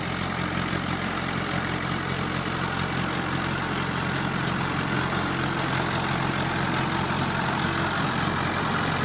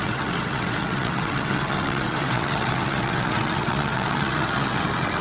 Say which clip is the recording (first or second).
first